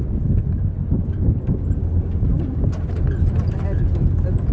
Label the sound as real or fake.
real